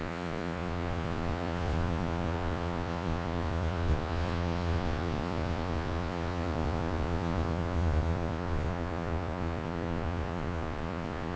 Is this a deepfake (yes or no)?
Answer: yes